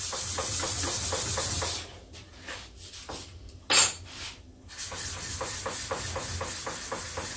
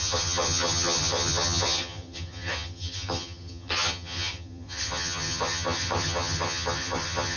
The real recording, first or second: first